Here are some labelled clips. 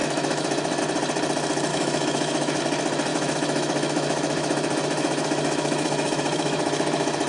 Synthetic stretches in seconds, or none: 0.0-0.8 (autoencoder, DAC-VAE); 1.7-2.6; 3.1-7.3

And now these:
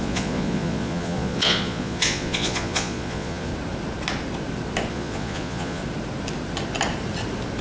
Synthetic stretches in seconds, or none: 0.0-3.5 (vocoder, Vocos); 4.9-5.8

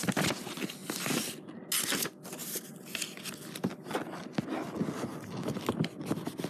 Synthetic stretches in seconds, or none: none